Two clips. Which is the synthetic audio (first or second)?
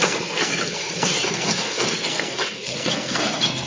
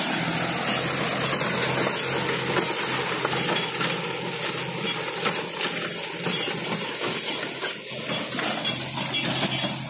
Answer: first